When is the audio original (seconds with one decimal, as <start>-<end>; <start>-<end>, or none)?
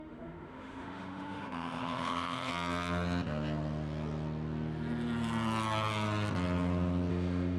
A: 2.5-7.1